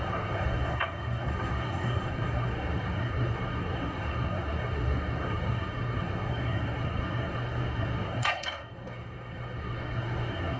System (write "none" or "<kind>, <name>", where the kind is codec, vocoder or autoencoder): codec, SNAC